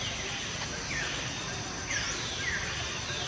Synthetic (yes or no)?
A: no